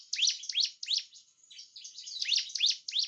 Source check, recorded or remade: recorded